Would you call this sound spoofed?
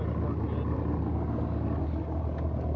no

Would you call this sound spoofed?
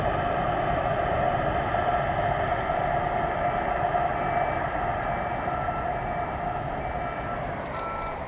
no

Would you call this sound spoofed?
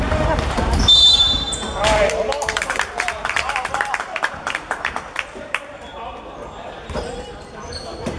yes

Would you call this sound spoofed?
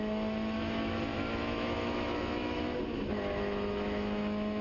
yes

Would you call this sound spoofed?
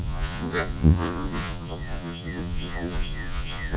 yes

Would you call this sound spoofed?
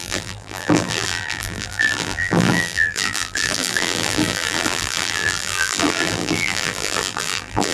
yes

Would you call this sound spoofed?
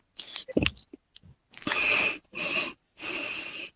no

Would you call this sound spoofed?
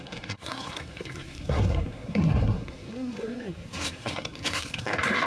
yes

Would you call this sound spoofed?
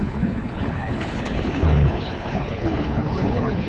yes